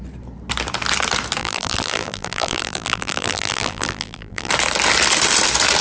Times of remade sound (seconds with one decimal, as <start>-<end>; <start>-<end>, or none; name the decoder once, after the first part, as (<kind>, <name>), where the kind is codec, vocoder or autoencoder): 1.4-4.5 (vocoder, BigVGAN v2)